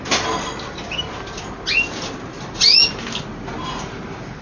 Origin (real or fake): real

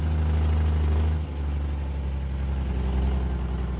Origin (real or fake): real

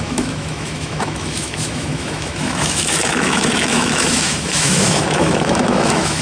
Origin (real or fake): fake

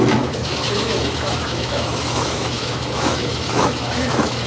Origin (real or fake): fake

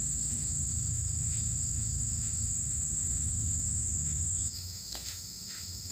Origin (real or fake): fake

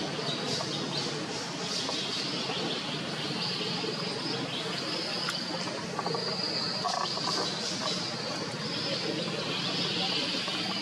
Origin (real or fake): real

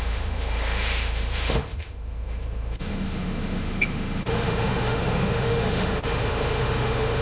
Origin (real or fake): fake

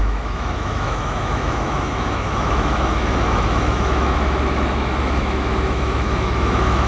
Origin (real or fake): fake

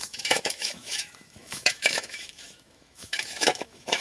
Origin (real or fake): fake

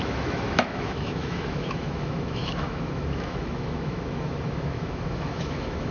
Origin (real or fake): fake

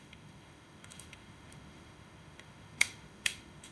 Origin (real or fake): fake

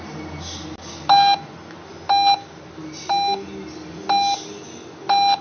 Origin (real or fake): real